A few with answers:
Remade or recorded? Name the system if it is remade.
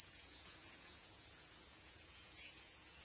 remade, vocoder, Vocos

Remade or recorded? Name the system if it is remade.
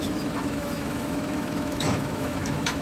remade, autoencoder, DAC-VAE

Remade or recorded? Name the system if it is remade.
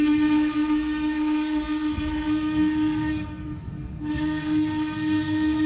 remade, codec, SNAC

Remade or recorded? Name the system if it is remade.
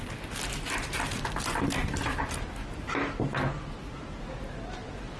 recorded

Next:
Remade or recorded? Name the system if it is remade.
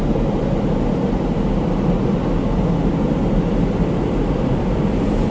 recorded